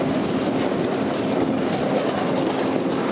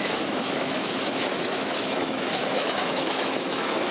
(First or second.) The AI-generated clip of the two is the second